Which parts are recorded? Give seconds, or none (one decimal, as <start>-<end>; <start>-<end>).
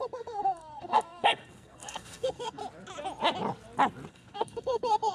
2.6-4.1